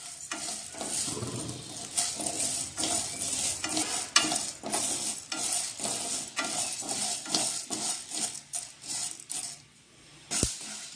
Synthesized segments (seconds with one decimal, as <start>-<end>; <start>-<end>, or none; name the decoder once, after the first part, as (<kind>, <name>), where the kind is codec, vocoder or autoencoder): none